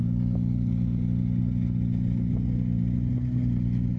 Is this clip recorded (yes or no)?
yes